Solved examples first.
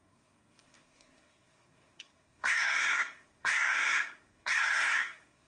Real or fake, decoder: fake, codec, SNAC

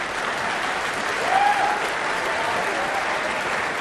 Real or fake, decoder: real